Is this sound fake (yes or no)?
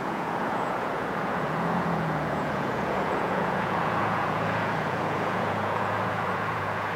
yes